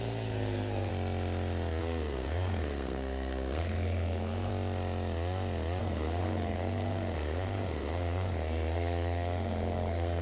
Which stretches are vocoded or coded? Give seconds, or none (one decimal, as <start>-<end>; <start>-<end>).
0.0-0.9; 1.8-4.5; 5.8-10.2